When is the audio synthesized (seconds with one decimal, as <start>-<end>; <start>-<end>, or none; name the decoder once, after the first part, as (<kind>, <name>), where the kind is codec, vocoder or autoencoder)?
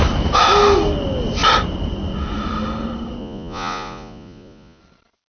3.2-4.8 (vocoder, Vocos)